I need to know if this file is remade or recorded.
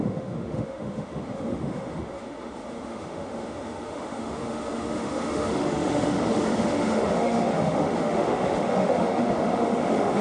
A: remade